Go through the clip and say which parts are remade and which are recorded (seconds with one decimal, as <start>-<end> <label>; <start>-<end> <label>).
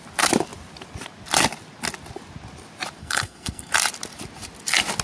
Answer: 0.0-3.0 recorded; 3.0-3.7 remade; 3.7-5.0 recorded